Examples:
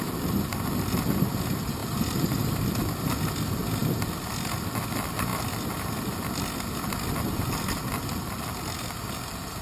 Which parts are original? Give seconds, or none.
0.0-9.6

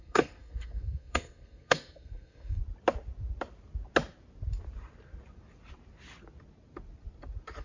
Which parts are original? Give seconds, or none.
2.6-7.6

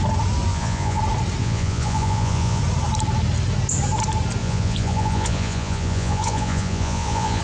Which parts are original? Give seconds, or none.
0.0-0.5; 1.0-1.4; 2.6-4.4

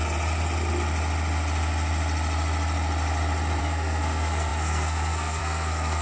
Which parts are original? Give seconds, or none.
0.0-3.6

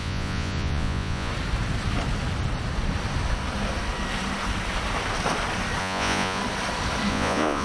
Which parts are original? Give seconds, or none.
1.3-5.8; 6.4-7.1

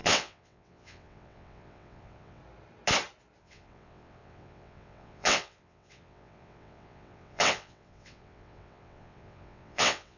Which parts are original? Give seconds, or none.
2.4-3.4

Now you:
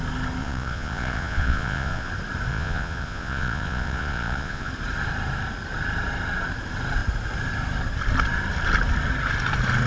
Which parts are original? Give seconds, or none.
0.0-0.4; 2.1-2.5; 4.7-9.9

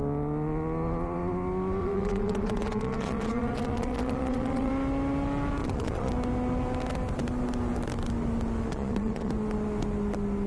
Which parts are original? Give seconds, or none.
0.0-1.8; 4.7-5.6; 6.1-8.7; 9.3-10.5